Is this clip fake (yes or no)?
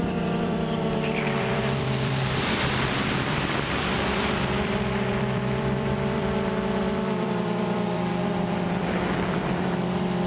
yes